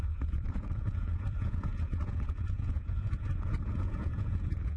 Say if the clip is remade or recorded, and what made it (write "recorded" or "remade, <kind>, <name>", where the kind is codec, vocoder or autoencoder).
remade, vocoder, Vocos